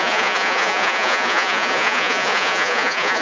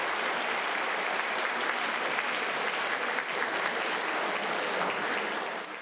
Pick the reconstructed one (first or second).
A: first